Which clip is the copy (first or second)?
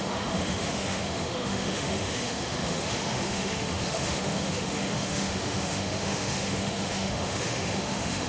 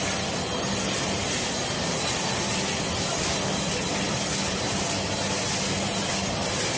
first